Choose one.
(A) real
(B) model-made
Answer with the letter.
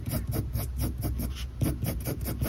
A